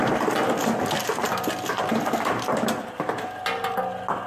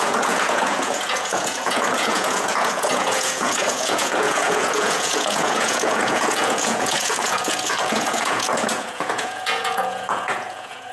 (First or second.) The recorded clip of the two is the first